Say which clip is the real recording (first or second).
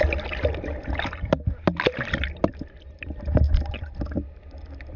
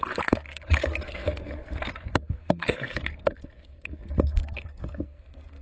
first